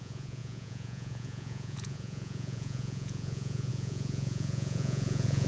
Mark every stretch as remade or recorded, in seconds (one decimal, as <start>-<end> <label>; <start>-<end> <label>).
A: 0.0-5.5 remade